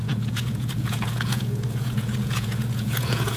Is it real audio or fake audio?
fake